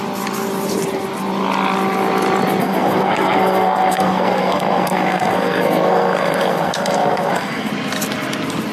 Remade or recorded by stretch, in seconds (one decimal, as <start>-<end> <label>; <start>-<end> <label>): 0.0-2.6 recorded; 2.6-7.7 remade; 7.7-8.7 recorded

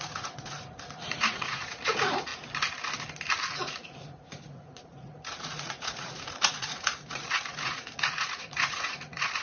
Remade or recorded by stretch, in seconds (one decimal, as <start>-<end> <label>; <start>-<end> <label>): 0.0-2.3 remade; 2.3-3.4 recorded; 3.4-9.4 remade

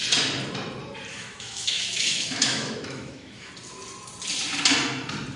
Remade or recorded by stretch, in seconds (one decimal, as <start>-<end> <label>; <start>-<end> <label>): 0.0-1.1 recorded; 1.1-3.5 remade; 3.5-5.4 recorded

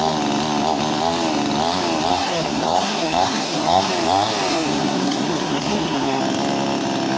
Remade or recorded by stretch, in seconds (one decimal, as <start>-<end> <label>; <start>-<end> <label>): 0.0-2.1 recorded; 2.1-3.9 remade; 3.9-4.5 recorded; 4.5-6.2 remade; 6.2-7.2 recorded

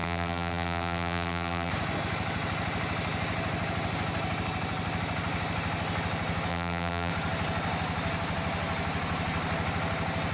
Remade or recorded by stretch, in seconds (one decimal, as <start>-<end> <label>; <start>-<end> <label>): 0.0-1.7 remade; 1.7-6.5 recorded; 6.5-7.1 remade; 7.1-10.3 recorded